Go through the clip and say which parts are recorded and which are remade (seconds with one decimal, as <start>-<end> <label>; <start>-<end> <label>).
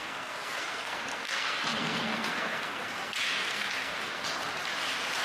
0.0-4.4 remade; 4.4-5.2 recorded